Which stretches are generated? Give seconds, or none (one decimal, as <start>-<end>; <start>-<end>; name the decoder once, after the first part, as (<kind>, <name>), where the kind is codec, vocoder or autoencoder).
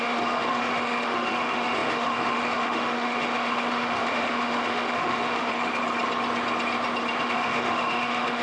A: 0.0-5.5 (autoencoder, DAC-VAE); 7.2-8.4